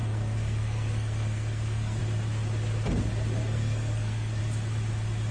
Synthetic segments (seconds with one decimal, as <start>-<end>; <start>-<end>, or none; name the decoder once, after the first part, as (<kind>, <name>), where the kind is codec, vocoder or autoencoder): 0.0-2.0 (codec, SNAC); 3.4-4.4